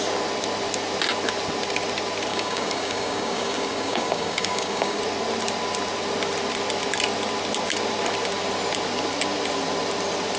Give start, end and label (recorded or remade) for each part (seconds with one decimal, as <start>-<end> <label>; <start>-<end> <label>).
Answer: 0.0-2.3 recorded; 2.3-5.0 remade; 5.0-10.4 recorded